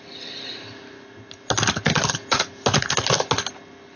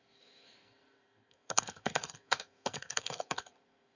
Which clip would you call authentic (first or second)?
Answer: first